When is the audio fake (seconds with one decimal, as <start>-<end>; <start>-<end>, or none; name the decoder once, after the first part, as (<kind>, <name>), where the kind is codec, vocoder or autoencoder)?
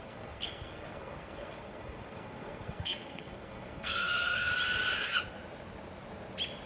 0.0-4.5 (codec, SNAC)